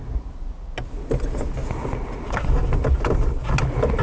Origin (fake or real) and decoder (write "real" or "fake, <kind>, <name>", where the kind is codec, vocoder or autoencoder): real